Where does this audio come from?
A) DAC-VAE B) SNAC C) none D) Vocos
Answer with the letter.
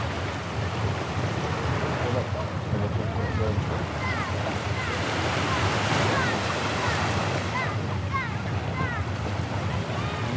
C